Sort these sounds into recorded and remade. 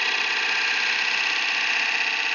recorded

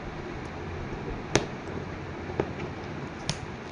recorded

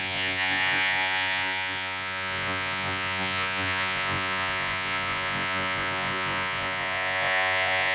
remade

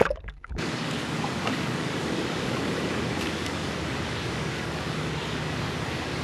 remade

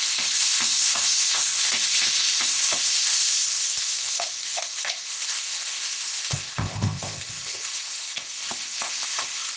remade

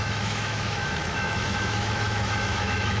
remade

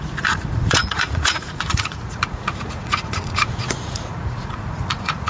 remade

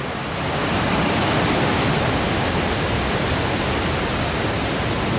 recorded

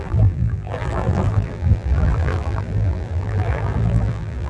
remade